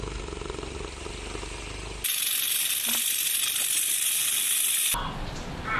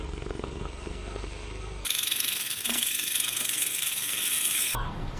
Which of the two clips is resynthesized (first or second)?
second